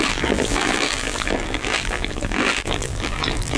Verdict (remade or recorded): remade